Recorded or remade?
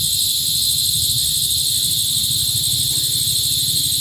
recorded